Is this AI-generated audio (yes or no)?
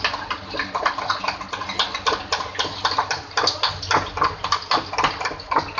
no